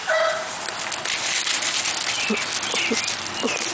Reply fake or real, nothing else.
real